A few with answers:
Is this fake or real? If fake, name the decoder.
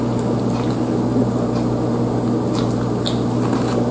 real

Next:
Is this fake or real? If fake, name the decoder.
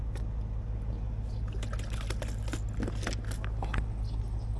real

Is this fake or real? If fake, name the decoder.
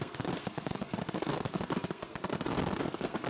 fake, codec, SNAC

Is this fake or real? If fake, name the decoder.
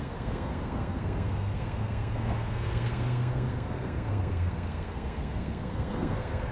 fake, codec, SNAC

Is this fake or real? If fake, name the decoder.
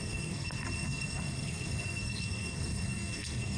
fake, codec, SNAC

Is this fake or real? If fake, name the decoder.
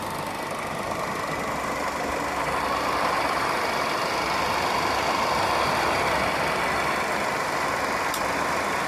real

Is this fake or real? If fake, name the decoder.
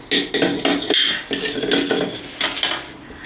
real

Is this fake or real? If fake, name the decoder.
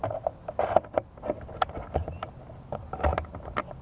real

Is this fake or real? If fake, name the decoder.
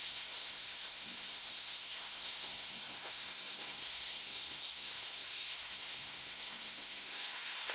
fake, codec, SNAC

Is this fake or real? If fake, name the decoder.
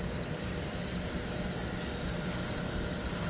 real